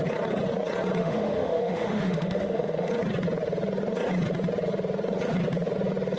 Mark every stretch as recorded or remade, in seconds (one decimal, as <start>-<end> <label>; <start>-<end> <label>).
0.0-1.0 recorded; 1.0-2.9 remade; 2.9-6.2 recorded